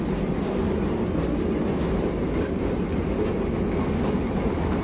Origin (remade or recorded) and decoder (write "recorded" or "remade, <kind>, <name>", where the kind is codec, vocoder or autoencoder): recorded